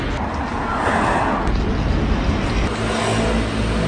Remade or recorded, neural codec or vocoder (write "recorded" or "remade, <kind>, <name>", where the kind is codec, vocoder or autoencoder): recorded